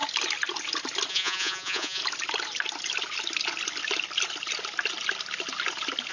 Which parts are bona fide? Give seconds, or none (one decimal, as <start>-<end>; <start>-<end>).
0.0-1.1; 2.0-6.1